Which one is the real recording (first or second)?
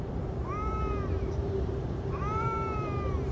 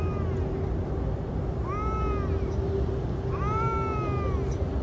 second